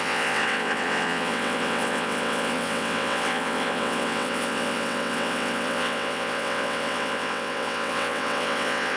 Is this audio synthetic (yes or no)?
yes